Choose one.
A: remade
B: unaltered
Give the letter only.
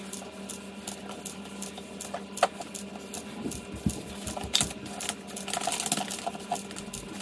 B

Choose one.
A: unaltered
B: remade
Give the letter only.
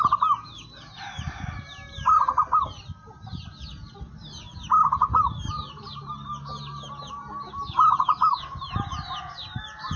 A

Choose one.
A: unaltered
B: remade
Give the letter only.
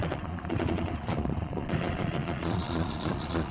B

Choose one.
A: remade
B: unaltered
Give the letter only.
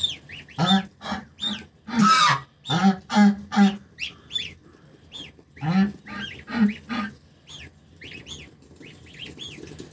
B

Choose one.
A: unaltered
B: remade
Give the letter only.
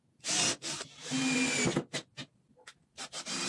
A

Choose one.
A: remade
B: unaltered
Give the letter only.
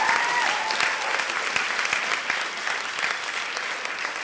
B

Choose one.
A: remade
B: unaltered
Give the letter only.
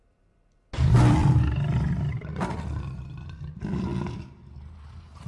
B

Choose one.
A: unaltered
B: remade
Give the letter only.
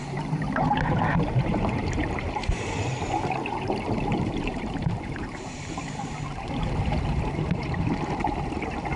B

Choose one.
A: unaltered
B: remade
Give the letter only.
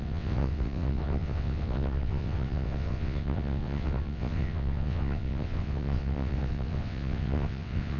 B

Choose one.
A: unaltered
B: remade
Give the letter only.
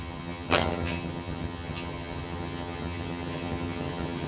B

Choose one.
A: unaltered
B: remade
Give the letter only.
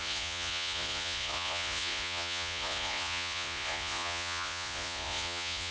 B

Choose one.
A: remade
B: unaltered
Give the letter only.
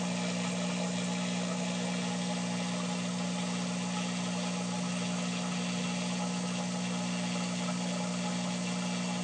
B